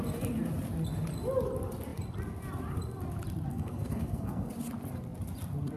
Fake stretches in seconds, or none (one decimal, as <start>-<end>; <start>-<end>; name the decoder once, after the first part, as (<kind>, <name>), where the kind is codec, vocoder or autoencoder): 3.5-4.5 (codec, SNAC)